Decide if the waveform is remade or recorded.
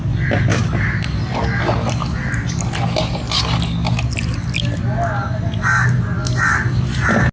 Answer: recorded